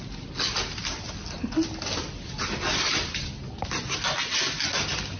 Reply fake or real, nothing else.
real